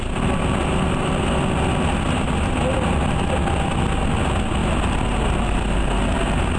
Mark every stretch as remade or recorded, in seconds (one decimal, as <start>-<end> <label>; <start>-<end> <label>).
0.0-6.6 recorded